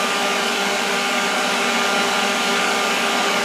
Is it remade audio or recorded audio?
remade